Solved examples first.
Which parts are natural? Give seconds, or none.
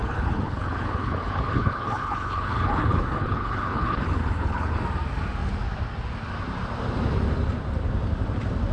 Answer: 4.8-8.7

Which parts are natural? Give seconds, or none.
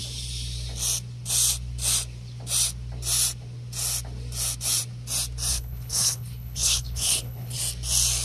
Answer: 0.0-5.5; 7.6-8.2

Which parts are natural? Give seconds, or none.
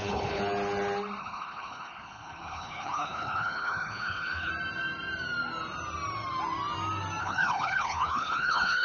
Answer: 0.4-1.2; 4.5-7.2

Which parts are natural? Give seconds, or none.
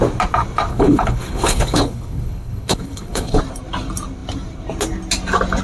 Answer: 0.0-0.7; 3.4-5.6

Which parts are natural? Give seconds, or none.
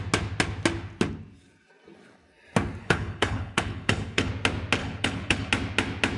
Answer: 0.0-2.8; 4.3-4.8; 5.5-6.2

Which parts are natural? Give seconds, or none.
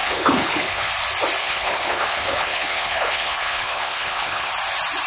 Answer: 0.9-1.4; 4.5-5.1